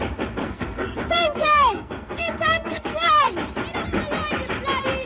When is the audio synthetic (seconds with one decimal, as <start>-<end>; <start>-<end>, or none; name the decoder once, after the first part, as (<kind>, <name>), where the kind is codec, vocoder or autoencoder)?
0.4-3.3 (codec, SNAC)